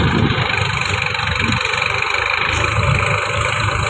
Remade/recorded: recorded